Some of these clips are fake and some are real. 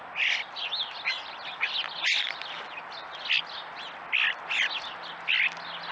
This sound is real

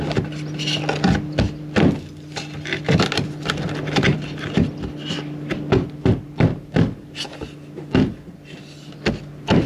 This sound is real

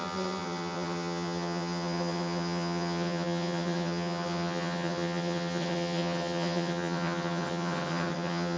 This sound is fake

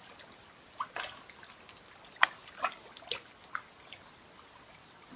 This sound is real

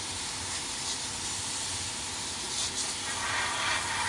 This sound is real